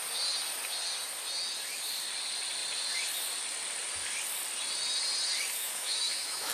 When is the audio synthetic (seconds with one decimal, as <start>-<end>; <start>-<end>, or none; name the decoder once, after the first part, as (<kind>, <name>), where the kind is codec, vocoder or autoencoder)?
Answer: 5.6-6.5 (autoencoder, DAC-VAE)